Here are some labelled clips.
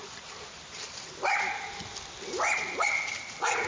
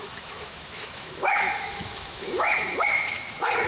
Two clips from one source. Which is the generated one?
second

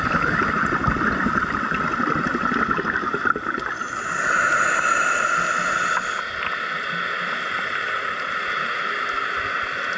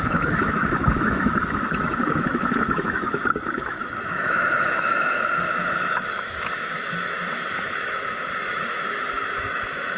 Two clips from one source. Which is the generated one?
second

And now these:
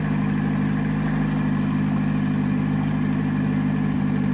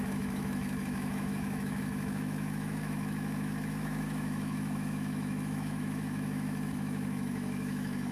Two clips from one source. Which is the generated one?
second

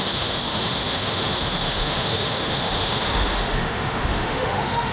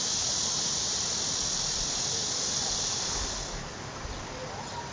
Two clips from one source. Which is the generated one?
first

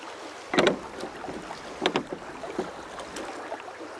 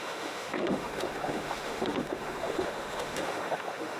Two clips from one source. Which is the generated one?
second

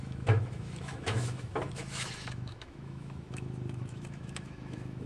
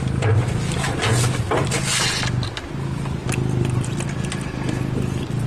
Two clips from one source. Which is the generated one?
first